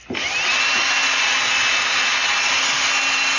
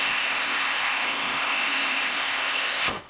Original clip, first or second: first